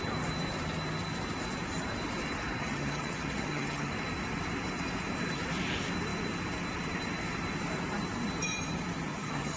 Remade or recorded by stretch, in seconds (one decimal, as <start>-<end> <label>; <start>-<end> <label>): 0.0-2.6 recorded; 2.6-3.9 remade; 3.9-9.1 recorded; 9.1-9.6 remade